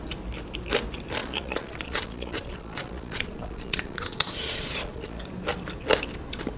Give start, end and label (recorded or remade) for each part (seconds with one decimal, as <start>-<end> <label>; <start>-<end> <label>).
0.0-1.2 recorded; 1.2-5.2 remade; 5.2-6.6 recorded